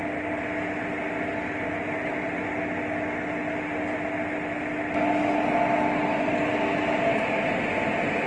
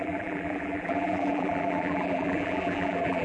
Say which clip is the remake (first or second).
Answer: second